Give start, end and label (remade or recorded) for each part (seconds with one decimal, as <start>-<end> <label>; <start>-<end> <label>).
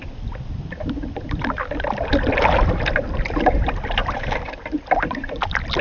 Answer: 0.0-4.0 recorded; 4.0-4.8 remade; 4.8-5.8 recorded